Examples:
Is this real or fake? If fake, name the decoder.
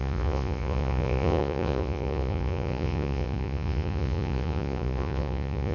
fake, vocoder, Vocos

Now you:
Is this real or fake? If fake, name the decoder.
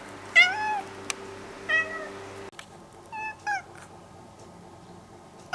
real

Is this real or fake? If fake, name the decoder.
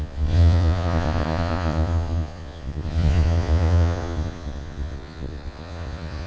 fake, vocoder, Vocos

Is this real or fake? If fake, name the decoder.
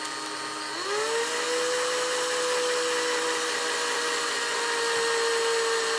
real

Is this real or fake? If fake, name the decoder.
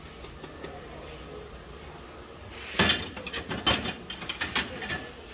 real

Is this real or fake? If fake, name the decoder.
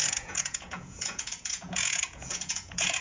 fake, vocoder, Vocos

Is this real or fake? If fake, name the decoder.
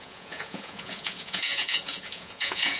fake, vocoder, Vocos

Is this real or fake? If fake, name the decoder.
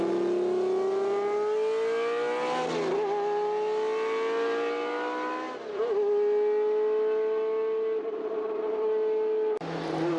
real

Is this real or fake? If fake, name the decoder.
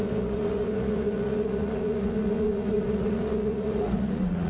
fake, vocoder, Vocos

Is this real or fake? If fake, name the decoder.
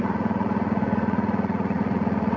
fake, vocoder, Vocos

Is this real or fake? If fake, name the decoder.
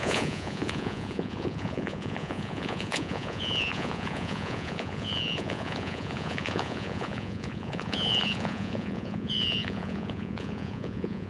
fake, vocoder, Vocos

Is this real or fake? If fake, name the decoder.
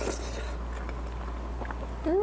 real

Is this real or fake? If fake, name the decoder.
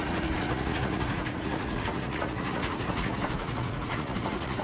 fake, vocoder, Vocos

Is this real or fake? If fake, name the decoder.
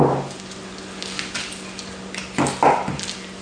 real